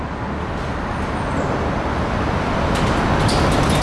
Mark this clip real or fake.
real